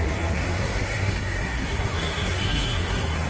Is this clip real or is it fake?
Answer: fake